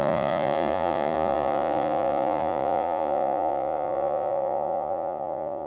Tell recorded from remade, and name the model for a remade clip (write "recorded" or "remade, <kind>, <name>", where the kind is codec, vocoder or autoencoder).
remade, vocoder, Vocos